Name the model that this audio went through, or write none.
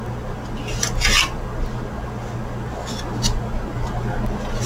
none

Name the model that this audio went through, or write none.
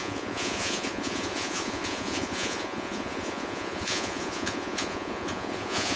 vocoder, Vocos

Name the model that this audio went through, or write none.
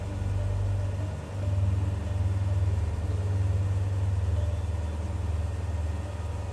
none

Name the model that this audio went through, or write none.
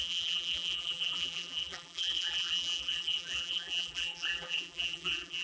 vocoder, BigVGAN v2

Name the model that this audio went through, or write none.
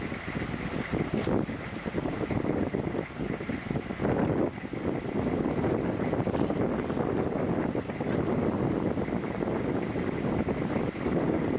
none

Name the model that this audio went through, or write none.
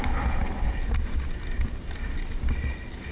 none